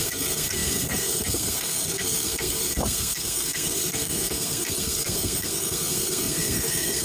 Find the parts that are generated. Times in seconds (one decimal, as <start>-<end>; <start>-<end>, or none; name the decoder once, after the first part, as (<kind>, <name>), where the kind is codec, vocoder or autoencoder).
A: 0.0-7.0 (codec, SNAC)